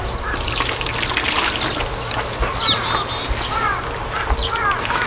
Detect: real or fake real